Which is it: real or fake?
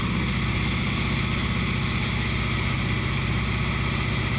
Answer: real